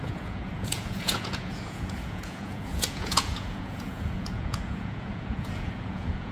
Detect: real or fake fake